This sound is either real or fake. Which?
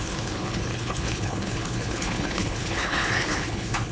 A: fake